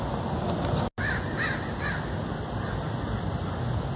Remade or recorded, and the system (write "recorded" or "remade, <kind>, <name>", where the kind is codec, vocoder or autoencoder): recorded